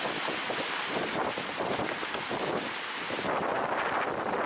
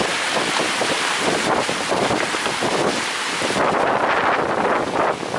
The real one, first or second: first